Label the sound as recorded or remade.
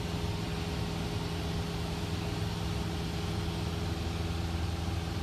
recorded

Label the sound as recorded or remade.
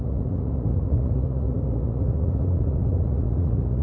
remade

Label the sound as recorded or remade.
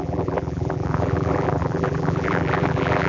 remade